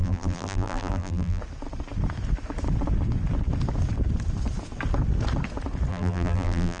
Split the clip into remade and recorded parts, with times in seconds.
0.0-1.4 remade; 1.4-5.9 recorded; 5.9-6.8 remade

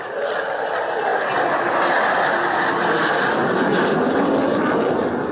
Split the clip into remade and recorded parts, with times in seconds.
0.0-5.3 recorded

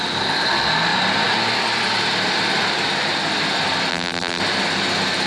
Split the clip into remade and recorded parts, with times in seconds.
0.0-3.9 recorded; 3.9-4.4 remade; 4.4-5.3 recorded

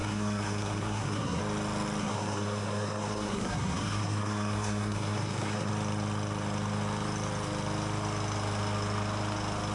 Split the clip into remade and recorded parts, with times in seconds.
0.0-1.4 remade; 1.4-2.0 recorded; 2.0-5.7 remade; 5.7-9.7 recorded

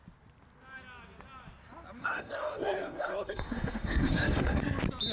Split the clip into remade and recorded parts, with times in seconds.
0.0-2.0 recorded; 2.0-4.6 remade; 4.6-5.1 recorded

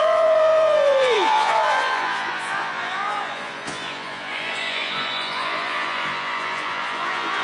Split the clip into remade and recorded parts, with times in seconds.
0.0-7.4 remade

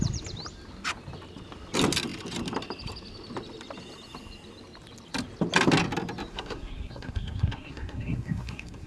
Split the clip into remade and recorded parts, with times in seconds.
0.0-6.3 recorded; 6.3-8.9 remade